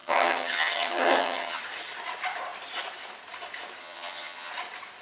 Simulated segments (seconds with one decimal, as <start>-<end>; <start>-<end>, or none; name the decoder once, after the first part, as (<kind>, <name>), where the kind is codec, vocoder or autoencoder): 0.0-1.6 (vocoder, HiFi-GAN); 3.8-4.5

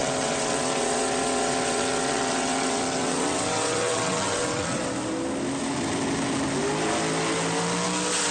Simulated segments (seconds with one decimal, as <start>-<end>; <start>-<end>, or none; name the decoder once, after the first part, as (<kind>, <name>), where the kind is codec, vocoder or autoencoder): 0.0-4.8 (vocoder, WaveNeXt)